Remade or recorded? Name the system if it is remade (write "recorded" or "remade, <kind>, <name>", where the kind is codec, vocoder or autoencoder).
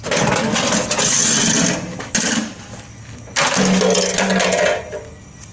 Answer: recorded